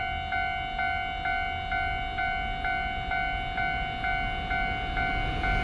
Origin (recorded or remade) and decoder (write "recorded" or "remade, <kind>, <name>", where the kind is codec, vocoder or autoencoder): recorded